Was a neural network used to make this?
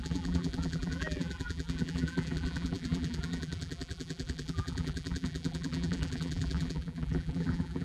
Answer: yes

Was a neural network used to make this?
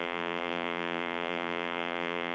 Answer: yes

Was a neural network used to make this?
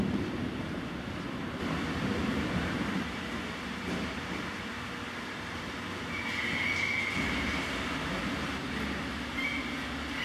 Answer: yes